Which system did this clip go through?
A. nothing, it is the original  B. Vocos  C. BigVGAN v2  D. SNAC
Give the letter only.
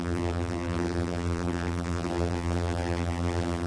C